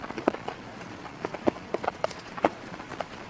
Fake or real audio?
fake